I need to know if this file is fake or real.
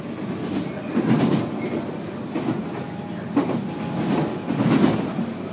real